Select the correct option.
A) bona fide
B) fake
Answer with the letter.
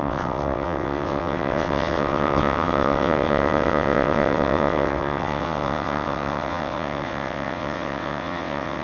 B